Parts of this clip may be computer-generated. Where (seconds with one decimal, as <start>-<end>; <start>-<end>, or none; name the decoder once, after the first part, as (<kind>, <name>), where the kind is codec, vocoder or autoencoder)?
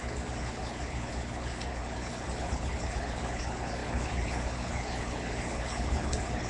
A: 0.0-6.5 (codec, HILCodec)